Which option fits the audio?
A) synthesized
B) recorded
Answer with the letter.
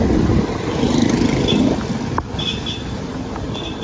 B